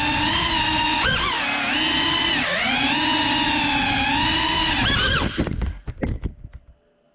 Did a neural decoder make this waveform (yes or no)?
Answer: no